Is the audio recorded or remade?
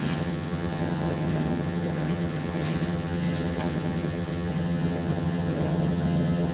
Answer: remade